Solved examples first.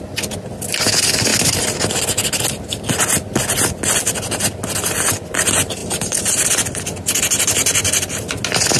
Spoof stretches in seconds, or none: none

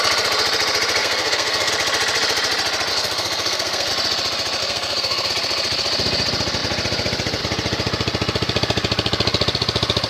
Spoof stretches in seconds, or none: 1.0-1.7; 2.9-3.9; 4.6-5.3